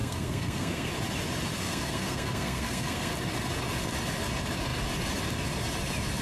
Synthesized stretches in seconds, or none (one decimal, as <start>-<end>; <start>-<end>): 0.0-0.9; 1.6-3.1